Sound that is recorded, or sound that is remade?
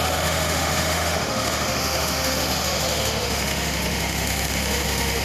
remade